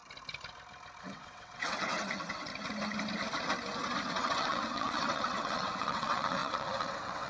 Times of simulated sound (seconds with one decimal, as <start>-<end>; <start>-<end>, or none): 1.0-2.5; 4.1-7.3